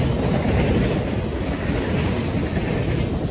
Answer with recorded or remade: recorded